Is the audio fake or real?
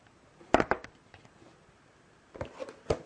real